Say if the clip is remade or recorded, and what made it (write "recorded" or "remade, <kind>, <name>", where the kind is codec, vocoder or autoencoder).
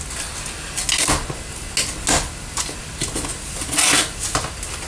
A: recorded